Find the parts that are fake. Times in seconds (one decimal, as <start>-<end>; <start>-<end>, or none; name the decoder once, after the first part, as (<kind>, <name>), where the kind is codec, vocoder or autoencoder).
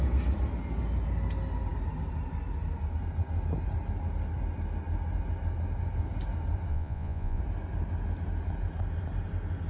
6.7-7.4 (vocoder, Vocos)